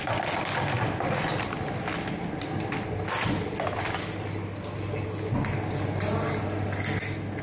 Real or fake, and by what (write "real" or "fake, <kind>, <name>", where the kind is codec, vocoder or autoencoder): real